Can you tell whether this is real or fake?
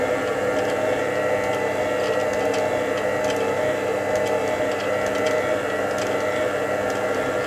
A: real